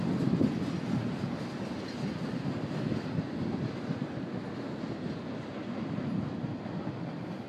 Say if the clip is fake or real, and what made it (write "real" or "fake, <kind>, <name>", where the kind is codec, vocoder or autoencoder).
real